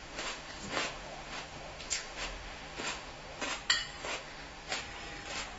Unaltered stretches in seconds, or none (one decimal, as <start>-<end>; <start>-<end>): 3.4-4.0; 4.7-5.6